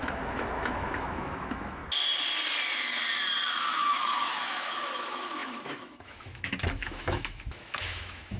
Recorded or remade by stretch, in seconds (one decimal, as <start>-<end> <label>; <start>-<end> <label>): 0.0-1.8 remade; 1.8-3.5 recorded; 3.5-8.4 remade